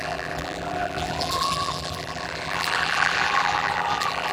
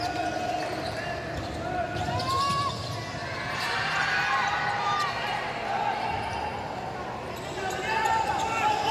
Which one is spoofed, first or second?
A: first